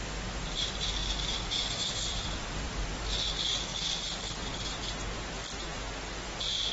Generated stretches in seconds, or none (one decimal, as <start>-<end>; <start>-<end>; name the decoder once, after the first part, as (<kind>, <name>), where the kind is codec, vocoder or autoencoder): 1.0-2.8 (vocoder, BigVGAN v2)